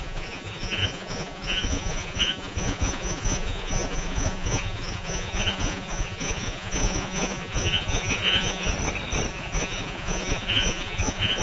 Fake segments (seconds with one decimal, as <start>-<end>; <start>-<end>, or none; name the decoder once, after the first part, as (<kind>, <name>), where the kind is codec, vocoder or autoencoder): 0.0-8.7 (vocoder, Vocos); 9.3-11.4

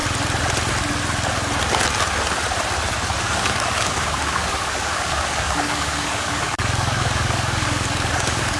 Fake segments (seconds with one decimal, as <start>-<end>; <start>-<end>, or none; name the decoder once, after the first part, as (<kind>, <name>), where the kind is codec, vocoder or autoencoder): 3.2-8.6 (codec, DAC)

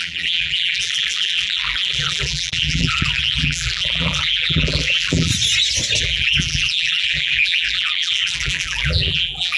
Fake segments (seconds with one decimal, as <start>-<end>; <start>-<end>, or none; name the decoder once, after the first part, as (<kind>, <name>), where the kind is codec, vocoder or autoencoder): 0.0-5.3 (vocoder, BigVGAN v2); 6.0-9.6